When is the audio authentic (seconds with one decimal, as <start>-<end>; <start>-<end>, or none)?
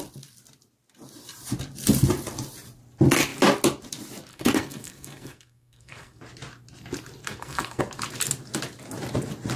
0.0-4.3; 6.2-7.2; 7.8-9.6